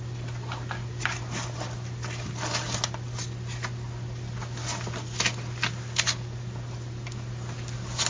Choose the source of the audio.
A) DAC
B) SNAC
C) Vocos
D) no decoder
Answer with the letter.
D